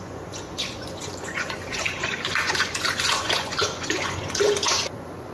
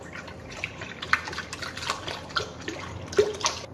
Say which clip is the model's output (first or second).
first